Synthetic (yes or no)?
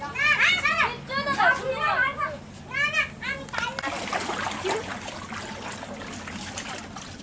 no